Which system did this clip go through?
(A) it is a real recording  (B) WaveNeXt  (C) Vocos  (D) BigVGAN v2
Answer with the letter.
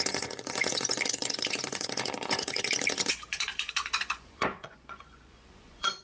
C